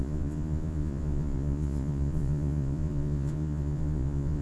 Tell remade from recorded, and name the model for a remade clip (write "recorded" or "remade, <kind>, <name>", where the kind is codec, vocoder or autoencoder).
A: remade, vocoder, Vocos